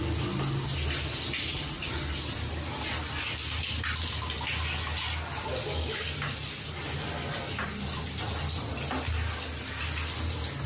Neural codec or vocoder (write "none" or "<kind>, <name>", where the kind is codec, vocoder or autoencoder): none